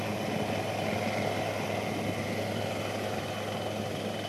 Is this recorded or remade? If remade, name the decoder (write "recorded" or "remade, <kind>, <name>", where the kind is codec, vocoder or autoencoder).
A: recorded